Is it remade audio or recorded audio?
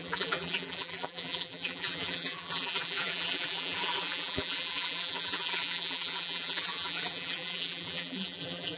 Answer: remade